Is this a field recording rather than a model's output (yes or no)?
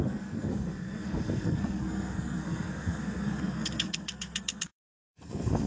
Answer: no